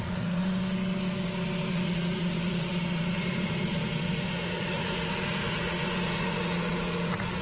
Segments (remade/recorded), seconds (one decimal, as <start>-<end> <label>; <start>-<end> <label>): 0.0-0.4 remade; 0.4-1.7 recorded; 1.7-7.4 remade